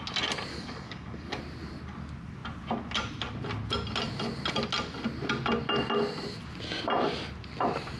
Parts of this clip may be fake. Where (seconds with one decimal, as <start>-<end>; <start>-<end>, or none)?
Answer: 0.5-1.4